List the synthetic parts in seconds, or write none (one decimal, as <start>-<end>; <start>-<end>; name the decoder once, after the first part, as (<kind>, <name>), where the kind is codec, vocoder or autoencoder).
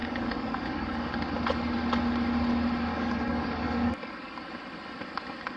0.0-1.1 (codec, DAC); 2.9-4.4